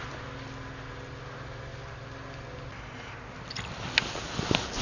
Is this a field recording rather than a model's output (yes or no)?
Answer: yes